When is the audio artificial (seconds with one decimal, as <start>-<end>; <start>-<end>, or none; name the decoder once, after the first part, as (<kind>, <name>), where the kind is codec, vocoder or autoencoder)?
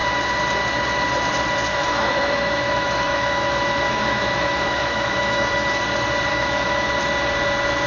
1.7-5.8 (autoencoder, DAC-VAE); 6.3-7.0